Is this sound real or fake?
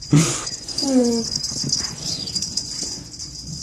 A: fake